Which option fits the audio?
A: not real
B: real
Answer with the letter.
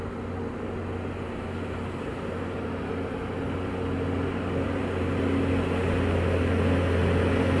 B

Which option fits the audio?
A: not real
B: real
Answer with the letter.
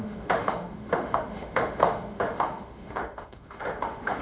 A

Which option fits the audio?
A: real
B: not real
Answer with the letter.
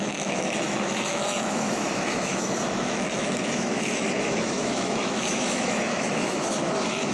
B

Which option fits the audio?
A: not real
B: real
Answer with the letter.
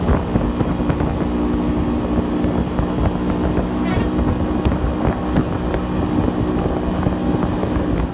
B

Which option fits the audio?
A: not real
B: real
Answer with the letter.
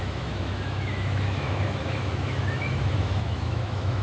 A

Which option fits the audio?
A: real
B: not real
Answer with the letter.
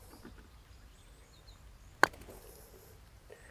A